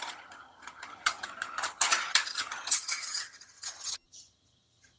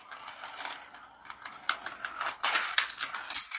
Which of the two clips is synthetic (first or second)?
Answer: first